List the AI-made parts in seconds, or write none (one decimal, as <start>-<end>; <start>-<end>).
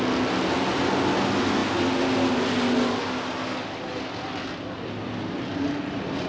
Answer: none